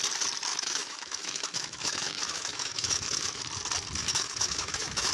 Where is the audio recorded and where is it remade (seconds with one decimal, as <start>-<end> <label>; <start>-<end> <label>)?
0.0-0.5 recorded; 0.5-3.4 remade; 3.4-4.0 recorded; 4.0-5.1 remade